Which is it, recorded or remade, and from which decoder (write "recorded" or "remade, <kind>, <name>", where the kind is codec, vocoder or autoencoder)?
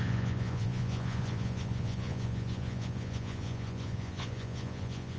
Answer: remade, vocoder, Vocos